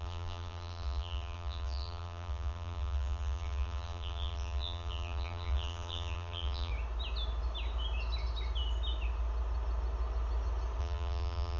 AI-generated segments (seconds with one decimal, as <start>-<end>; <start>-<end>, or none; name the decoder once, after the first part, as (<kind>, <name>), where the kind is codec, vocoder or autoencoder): 0.0-6.7 (vocoder, BigVGAN v2); 10.8-11.6